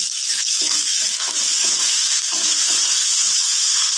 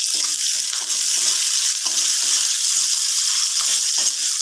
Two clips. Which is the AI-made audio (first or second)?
first